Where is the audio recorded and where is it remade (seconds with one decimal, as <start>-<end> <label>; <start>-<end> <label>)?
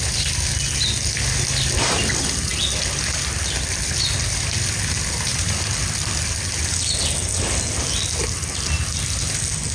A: 0.0-9.7 recorded